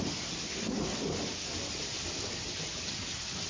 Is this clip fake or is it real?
real